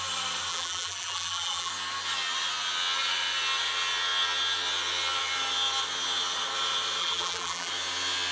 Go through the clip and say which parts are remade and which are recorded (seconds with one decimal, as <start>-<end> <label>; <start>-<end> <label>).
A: 0.0-0.5 recorded; 0.5-1.7 remade; 1.7-7.0 recorded; 7.0-7.7 remade; 7.7-8.3 recorded